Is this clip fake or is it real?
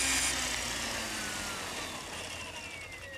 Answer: real